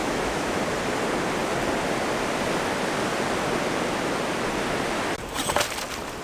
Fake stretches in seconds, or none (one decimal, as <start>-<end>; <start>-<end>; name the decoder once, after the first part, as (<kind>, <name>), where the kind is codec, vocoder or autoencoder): 0.0-0.6 (autoencoder, DAC-VAE)

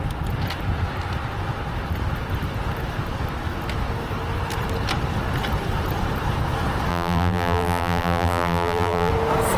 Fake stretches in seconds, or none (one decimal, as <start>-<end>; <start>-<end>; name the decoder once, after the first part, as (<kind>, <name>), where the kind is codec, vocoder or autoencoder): 6.9-9.1 (vocoder, BigVGAN v2)

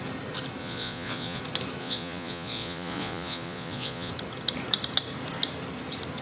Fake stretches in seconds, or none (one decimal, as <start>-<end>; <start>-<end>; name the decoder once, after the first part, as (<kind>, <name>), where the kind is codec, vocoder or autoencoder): 0.6-1.4 (vocoder, Vocos); 1.8-4.1

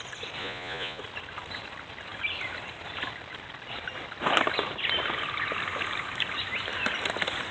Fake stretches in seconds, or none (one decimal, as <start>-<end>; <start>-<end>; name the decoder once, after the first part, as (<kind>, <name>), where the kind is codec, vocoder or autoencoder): 0.4-1.0 (vocoder, Vocos)